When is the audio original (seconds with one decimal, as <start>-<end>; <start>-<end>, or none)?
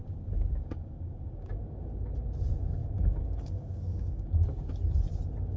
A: 1.6-2.8; 4.7-5.6